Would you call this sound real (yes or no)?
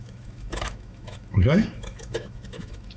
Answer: no